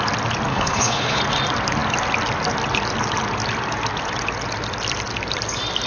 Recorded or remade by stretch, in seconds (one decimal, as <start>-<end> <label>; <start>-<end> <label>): 0.0-0.5 recorded; 0.5-1.2 remade; 1.2-5.9 recorded